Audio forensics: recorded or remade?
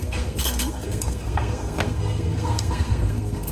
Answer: remade